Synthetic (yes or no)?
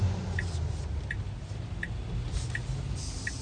no